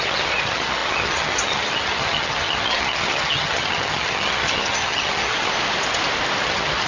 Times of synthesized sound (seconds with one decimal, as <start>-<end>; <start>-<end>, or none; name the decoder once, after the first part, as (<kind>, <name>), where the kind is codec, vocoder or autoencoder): 0.0-5.5 (vocoder, HiFi-GAN); 6.4-6.9